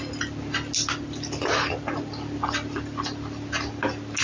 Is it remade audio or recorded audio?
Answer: recorded